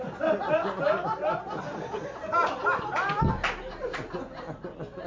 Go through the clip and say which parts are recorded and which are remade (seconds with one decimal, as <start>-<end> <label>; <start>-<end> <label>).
0.0-5.1 recorded